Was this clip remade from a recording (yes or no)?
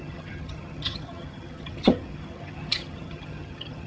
yes